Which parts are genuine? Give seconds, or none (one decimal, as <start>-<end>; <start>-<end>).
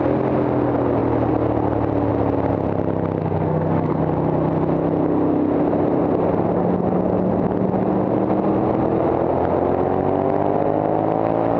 0.0-3.2; 4.0-11.6